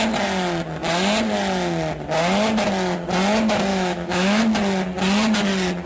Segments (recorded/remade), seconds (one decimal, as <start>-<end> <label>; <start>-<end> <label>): 0.0-3.7 recorded; 3.7-4.4 remade; 4.4-5.9 recorded